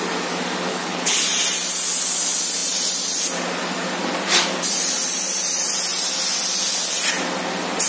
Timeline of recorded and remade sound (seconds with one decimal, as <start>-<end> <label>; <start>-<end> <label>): 0.0-0.7 recorded; 0.7-1.2 remade; 1.2-7.9 recorded